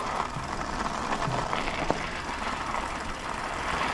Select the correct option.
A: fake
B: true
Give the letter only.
B